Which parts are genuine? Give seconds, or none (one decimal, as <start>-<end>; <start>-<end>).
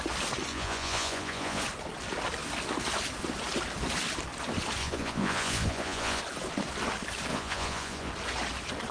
0.0-0.5; 1.6-4.8; 6.2-7.3; 8.1-8.9